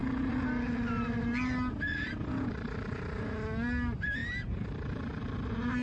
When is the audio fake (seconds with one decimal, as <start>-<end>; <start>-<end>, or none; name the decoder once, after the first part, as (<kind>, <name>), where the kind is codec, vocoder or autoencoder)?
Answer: none